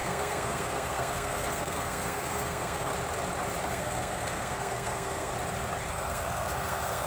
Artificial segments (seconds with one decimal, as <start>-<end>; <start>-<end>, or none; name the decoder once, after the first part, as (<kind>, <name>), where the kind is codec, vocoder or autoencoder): 0.0-2.9 (codec, SNAC); 3.7-5.3; 5.9-7.1

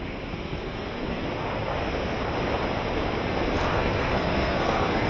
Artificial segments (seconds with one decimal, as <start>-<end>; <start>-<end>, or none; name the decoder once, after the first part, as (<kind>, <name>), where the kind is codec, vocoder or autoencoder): 0.0-1.2 (codec, SNAC); 3.7-5.1